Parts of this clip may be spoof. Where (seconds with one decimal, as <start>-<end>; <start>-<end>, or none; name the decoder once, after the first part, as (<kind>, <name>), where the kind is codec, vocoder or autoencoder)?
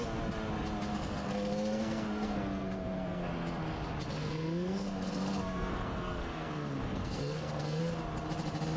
0.9-3.3 (codec, SNAC); 4.2-7.8